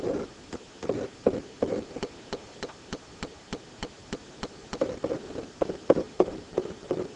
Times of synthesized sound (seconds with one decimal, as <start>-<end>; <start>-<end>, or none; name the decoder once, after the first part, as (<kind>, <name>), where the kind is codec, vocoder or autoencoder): none